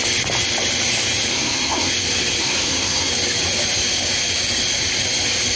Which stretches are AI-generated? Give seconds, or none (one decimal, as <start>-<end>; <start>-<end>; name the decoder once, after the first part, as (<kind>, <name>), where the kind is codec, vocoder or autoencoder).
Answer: 1.3-1.9 (codec, SNAC); 2.4-3.1